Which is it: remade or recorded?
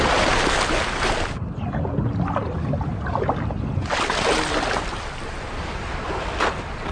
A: recorded